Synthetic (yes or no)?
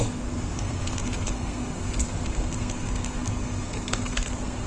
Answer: yes